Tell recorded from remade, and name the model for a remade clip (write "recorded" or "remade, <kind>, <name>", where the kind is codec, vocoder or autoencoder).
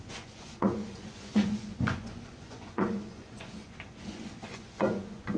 remade, vocoder, Vocos